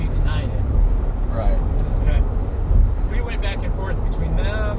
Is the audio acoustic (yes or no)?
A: yes